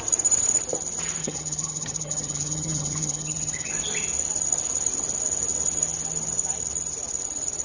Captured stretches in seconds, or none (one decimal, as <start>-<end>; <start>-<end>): 0.0-1.2; 3.7-7.6